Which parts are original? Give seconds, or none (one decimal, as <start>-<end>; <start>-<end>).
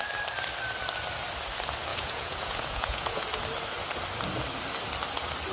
0.0-1.9; 3.2-5.5